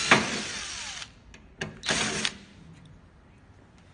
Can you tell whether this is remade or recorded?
recorded